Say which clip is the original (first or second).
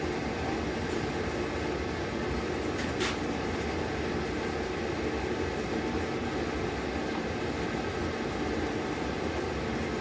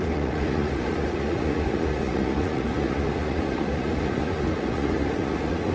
first